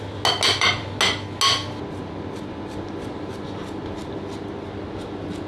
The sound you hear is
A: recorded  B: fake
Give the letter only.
A